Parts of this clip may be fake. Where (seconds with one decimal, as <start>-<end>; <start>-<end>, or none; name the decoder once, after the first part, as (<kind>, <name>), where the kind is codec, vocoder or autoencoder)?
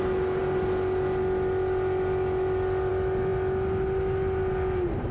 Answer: none